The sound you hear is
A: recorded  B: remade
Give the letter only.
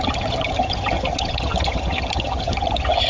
B